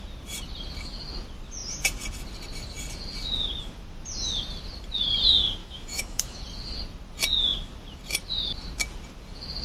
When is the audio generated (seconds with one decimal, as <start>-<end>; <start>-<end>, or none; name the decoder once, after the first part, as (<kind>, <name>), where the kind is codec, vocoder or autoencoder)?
5.6-6.4 (autoencoder, DAC-VAE)